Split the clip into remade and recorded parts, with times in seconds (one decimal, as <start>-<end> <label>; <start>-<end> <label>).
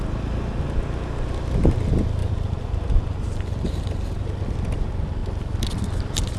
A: 0.0-2.2 recorded; 2.2-4.1 remade; 4.1-6.4 recorded